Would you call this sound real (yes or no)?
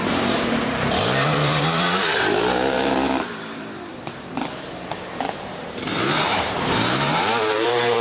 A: no